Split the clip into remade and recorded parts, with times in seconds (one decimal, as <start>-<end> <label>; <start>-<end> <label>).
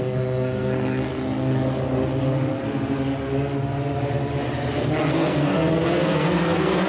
0.0-1.1 remade; 1.1-5.1 recorded; 5.1-6.9 remade